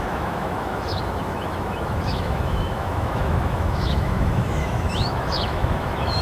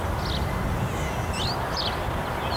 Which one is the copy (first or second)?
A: first